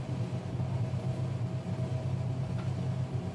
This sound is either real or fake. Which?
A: real